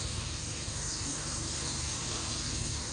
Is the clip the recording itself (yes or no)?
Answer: no